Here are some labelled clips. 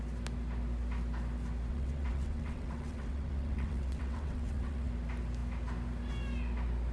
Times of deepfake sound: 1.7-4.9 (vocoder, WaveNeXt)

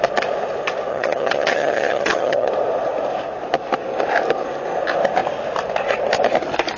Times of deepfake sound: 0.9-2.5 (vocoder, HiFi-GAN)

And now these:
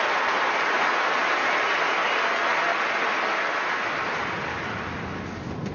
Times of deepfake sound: none